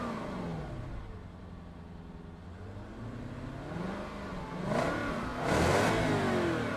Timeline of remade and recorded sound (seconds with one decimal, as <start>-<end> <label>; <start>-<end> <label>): 0.0-6.8 recorded